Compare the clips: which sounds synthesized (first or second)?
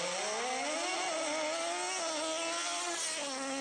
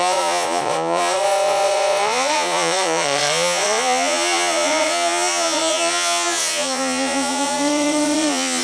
second